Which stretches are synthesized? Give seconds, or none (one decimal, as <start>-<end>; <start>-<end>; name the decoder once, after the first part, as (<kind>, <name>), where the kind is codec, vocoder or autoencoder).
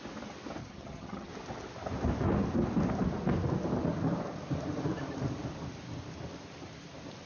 0.6-1.3 (vocoder, HiFi-GAN)